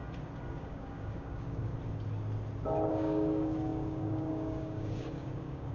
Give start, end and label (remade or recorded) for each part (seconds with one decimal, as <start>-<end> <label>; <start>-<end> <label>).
0.0-0.5 recorded; 0.5-1.7 remade; 1.7-2.9 recorded; 2.9-5.7 remade